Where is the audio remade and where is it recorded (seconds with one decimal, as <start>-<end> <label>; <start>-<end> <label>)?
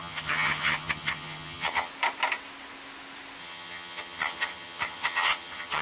0.0-1.9 remade; 1.9-3.4 recorded; 3.4-5.8 remade